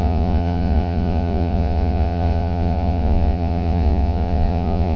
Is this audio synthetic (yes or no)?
yes